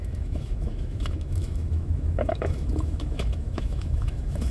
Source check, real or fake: fake